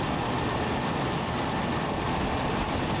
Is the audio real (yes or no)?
yes